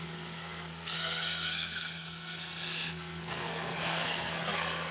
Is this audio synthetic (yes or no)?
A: yes